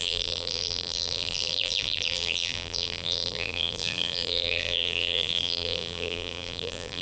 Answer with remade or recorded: remade